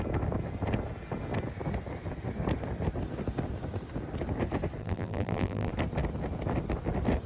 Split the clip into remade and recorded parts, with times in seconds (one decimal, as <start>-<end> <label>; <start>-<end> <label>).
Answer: 0.0-4.8 recorded; 4.8-5.7 remade; 5.7-7.3 recorded